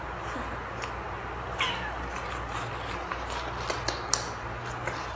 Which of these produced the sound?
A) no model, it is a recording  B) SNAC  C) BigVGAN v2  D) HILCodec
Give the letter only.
A